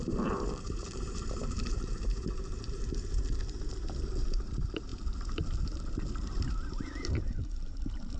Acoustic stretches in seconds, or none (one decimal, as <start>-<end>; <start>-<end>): none

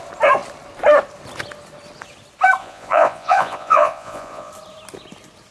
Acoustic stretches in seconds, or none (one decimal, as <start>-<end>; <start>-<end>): 0.0-2.6; 4.5-5.5

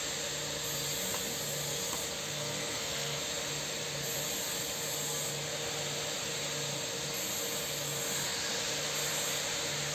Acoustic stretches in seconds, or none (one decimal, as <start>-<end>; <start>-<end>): 0.0-2.2; 3.2-9.9

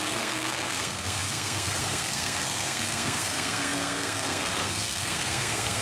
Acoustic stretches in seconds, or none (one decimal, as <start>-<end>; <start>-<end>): none

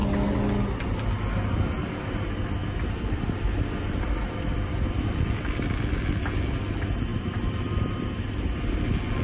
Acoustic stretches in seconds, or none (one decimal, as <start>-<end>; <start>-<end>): 0.0-7.1; 8.0-9.2

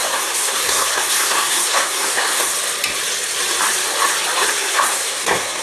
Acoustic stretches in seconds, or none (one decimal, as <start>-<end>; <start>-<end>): 2.5-4.6